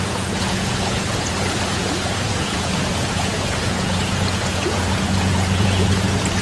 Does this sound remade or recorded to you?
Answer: remade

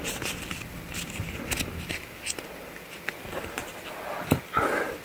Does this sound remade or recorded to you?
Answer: recorded